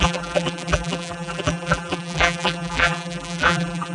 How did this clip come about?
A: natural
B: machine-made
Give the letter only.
B